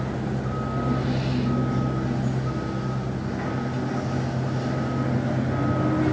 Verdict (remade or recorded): recorded